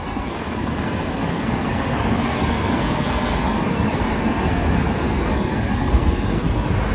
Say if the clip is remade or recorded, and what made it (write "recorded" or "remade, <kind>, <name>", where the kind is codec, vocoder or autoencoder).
remade, codec, SNAC